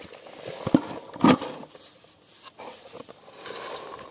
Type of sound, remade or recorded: recorded